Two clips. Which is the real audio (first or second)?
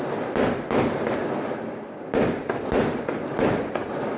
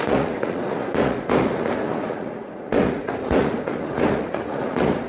first